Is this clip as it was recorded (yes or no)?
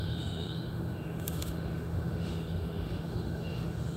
no